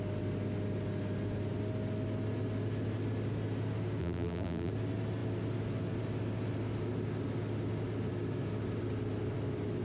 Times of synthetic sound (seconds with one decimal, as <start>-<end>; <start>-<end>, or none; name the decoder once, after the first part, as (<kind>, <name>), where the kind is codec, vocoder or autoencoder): 4.0-4.7 (vocoder, BigVGAN v2)